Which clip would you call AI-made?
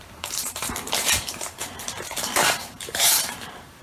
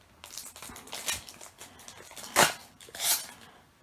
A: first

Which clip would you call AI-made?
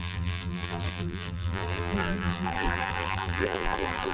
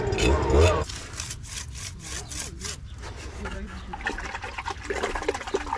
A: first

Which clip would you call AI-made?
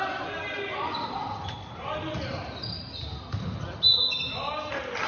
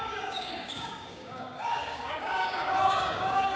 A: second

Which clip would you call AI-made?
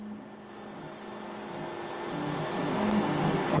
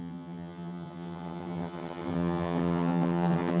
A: second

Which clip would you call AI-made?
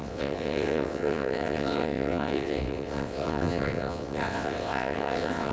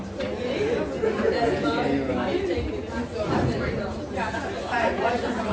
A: first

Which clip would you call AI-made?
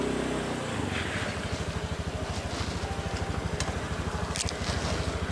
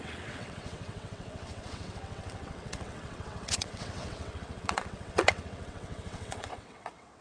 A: second